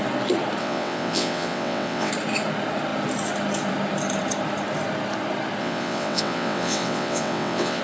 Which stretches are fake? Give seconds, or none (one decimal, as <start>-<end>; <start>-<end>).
0.6-2.1; 5.6-7.8